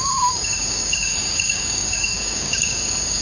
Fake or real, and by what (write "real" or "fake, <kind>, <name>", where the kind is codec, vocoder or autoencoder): fake, codec, DAC